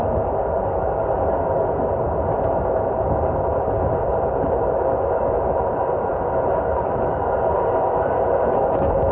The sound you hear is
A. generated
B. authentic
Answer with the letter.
B